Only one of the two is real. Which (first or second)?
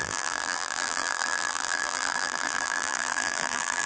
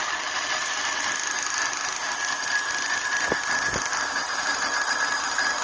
second